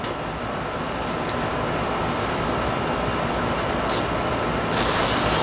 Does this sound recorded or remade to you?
recorded